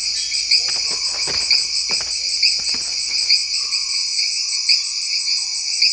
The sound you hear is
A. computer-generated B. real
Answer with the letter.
B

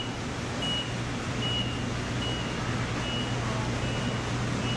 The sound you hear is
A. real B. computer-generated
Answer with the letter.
A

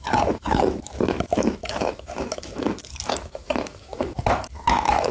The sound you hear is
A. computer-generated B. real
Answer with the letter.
A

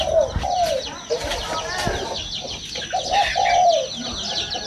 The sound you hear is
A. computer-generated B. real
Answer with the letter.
B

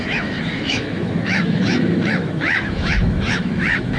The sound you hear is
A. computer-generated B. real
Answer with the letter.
A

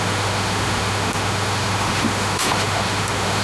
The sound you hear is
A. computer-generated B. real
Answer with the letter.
A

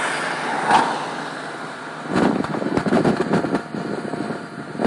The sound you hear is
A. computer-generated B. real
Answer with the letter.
B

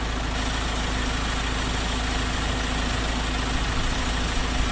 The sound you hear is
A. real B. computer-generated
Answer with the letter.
A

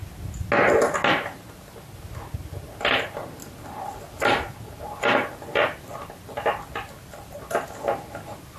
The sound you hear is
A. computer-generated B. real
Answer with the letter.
B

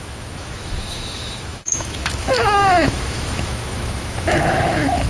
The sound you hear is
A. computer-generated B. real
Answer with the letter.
A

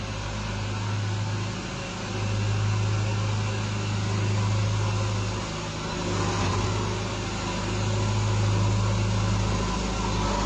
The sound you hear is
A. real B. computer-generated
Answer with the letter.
A